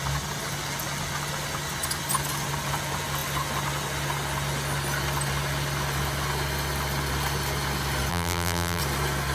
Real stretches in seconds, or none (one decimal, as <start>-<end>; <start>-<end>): 0.0-8.1; 8.8-9.3